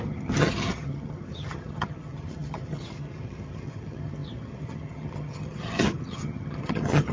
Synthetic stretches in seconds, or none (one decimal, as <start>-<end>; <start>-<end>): 0.0-7.1